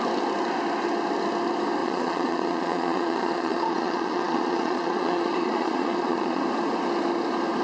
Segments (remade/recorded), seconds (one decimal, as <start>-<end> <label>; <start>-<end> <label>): 0.0-1.8 recorded; 1.8-6.4 remade; 6.4-7.6 recorded